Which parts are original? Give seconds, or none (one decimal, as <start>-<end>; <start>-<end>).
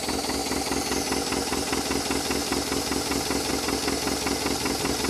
0.0-5.1